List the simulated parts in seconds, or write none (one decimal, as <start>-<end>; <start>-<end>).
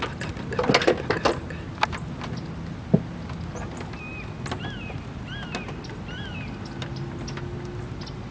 none